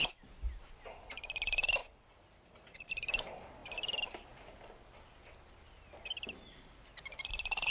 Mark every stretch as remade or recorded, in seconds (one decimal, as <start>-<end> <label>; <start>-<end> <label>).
0.0-1.8 recorded; 1.8-2.9 remade; 2.9-7.7 recorded